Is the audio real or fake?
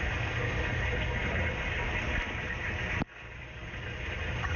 real